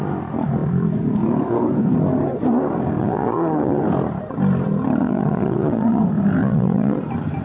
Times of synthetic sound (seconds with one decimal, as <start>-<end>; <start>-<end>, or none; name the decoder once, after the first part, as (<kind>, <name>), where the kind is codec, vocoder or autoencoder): 3.0-3.8 (vocoder, Vocos); 5.0-6.0; 6.4-7.0